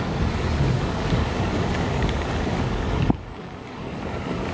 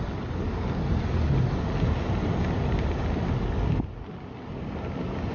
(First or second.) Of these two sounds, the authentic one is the second